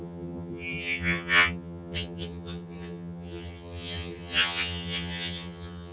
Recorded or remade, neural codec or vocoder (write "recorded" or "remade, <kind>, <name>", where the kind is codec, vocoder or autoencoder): remade, vocoder, HiFi-GAN